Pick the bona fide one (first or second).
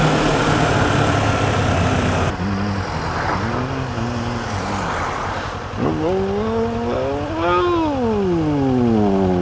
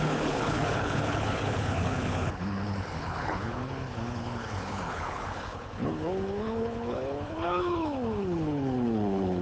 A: first